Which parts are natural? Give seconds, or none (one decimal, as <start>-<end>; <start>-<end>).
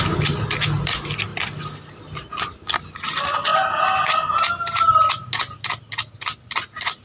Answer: 0.0-7.0